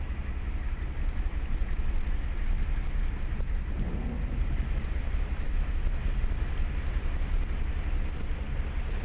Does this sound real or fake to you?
real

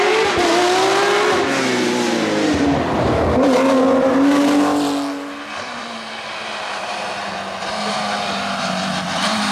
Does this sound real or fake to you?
real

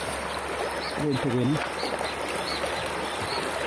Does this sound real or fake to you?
real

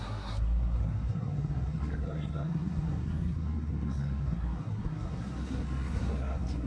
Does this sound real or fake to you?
fake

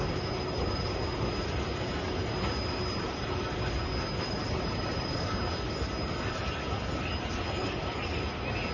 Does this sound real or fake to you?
real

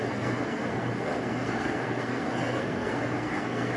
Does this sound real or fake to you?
fake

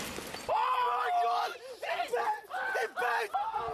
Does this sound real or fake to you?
real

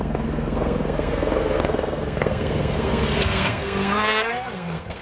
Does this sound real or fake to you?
fake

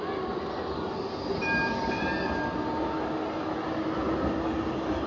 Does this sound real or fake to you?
real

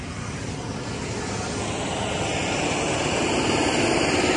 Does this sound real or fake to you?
real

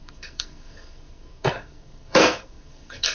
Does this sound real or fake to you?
fake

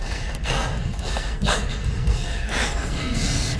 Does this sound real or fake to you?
fake